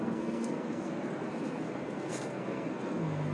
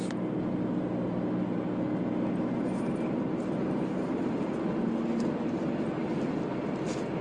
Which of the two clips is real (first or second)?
second